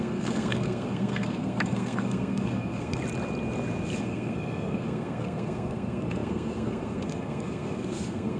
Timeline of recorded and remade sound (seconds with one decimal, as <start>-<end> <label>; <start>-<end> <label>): 0.0-3.0 remade; 3.0-4.0 recorded; 4.0-8.4 remade